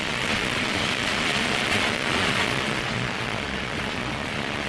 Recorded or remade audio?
remade